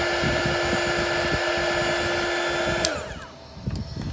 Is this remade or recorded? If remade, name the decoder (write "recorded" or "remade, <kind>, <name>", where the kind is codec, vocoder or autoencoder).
recorded